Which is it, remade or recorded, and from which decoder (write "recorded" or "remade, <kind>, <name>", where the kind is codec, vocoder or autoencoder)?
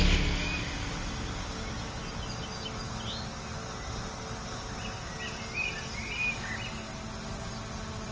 recorded